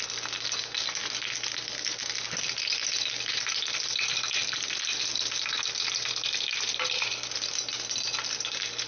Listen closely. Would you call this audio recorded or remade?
recorded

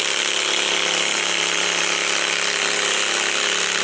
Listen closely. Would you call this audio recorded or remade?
recorded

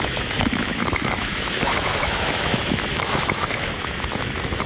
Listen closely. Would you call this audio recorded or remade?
remade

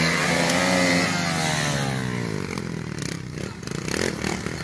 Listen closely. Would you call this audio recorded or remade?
recorded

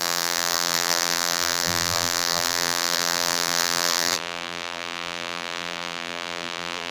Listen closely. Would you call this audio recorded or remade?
remade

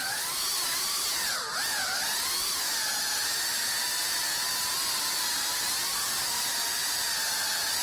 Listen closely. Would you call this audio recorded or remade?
recorded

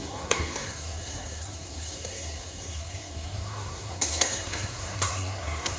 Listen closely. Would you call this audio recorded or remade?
remade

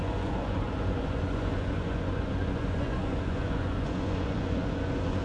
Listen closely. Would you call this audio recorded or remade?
remade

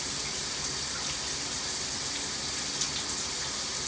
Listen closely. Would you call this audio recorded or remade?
recorded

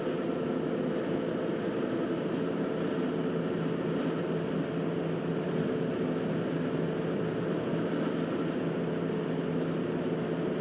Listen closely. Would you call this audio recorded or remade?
recorded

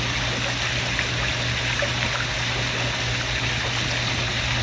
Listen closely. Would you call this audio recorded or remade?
recorded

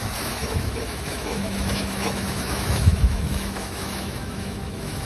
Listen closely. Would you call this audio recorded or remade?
remade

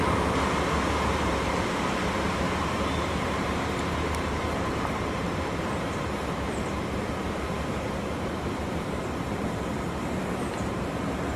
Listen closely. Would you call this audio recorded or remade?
remade